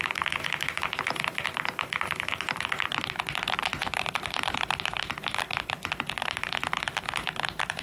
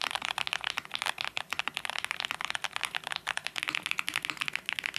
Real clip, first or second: second